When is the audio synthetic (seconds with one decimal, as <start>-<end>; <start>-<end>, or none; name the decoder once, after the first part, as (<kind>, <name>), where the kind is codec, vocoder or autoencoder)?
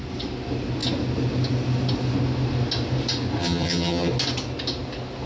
3.4-4.1 (vocoder, HiFi-GAN)